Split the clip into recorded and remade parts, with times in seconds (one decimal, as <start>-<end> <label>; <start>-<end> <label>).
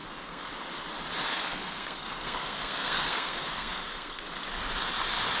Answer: 0.0-0.5 remade; 0.5-1.3 recorded; 1.3-4.2 remade; 4.2-5.4 recorded